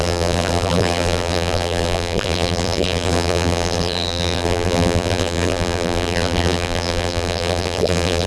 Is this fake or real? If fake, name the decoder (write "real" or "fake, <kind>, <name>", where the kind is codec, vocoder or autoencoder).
fake, vocoder, BigVGAN v2